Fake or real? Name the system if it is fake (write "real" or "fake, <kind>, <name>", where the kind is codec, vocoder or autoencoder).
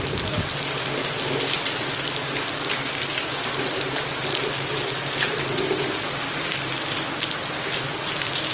real